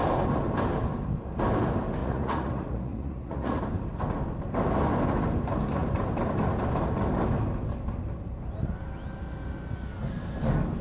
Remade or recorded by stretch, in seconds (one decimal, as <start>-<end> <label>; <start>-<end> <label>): 0.0-2.0 recorded; 2.0-3.6 remade; 3.6-10.8 recorded

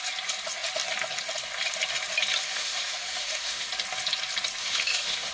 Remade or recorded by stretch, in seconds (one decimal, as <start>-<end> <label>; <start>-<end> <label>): 0.0-2.4 recorded; 2.4-3.7 remade; 3.7-4.6 recorded; 4.6-5.3 remade

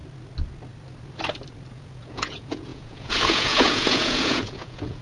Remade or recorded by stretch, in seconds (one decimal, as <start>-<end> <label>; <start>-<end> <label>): 0.0-1.7 recorded; 1.7-5.0 remade

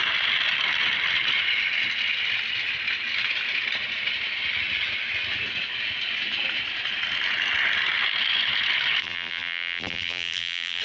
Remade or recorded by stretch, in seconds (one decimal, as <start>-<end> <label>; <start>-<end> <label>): 0.0-9.0 recorded; 9.0-10.8 remade